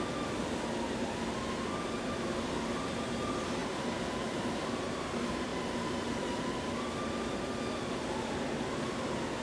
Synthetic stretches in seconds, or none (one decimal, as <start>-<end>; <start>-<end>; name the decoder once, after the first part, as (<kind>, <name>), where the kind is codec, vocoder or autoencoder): 3.6-5.0 (vocoder, BigVGAN v2)